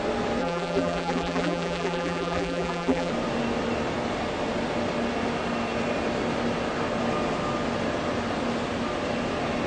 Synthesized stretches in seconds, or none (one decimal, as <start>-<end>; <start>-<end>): 0.4-3.1